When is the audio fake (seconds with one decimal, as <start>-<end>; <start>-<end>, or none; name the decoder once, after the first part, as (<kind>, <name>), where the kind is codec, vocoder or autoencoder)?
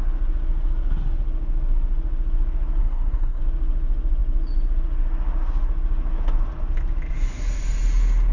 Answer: 2.8-3.4 (codec, SNAC)